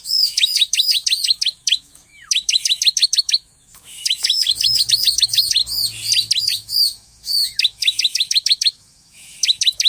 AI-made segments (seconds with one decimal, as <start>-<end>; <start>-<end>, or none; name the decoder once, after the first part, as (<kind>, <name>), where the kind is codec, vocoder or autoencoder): 0.0-5.6 (autoencoder, DAC-VAE); 6.4-9.9